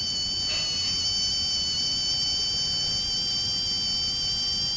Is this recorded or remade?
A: recorded